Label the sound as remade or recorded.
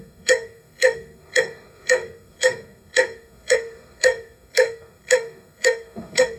remade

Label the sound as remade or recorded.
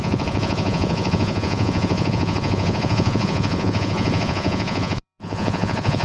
remade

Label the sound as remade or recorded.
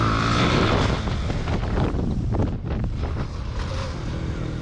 recorded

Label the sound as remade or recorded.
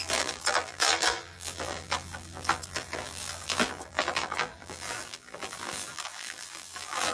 remade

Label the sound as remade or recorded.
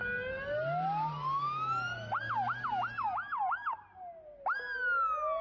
recorded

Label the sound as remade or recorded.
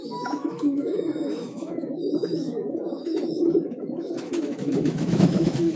remade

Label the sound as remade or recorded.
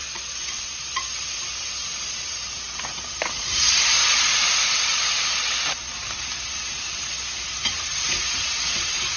remade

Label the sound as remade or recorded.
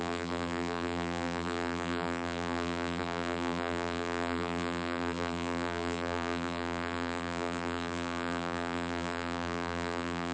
remade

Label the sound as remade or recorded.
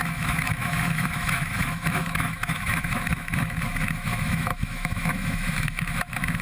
remade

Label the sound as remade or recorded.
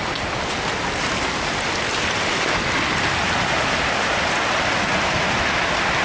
recorded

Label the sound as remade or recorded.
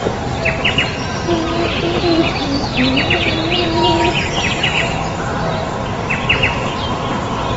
recorded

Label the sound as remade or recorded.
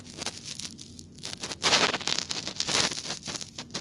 recorded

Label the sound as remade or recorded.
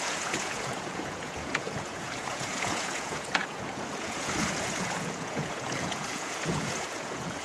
remade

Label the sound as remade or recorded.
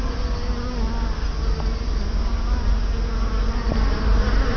recorded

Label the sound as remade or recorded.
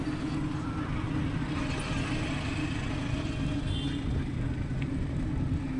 recorded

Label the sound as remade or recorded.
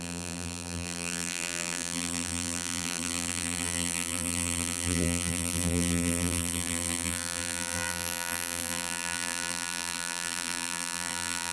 remade